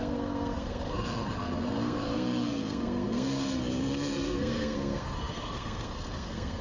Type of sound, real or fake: fake